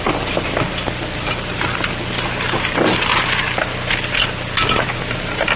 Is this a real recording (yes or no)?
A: yes